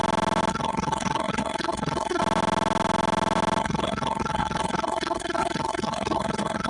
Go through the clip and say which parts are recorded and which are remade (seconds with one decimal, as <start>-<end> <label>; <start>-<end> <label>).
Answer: 0.0-0.5 recorded; 0.5-2.2 remade; 2.2-3.6 recorded; 3.6-6.7 remade